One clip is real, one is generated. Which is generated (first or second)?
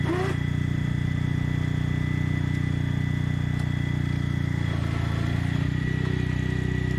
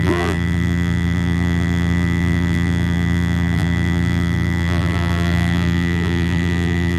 second